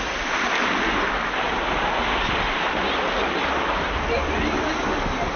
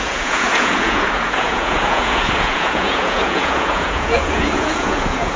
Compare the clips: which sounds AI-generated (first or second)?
second